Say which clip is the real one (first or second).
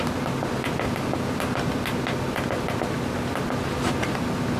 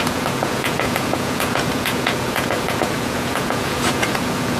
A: first